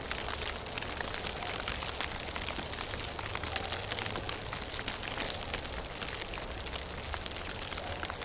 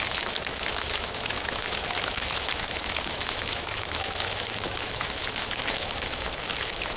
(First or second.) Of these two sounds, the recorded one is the first